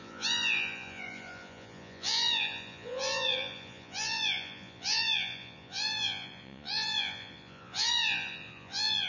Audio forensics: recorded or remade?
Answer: remade